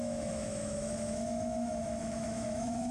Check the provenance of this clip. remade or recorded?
remade